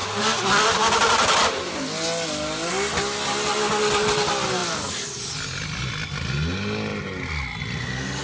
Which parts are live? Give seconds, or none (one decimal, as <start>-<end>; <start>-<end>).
0.0-8.2